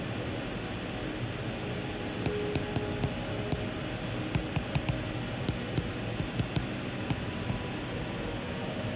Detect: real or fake real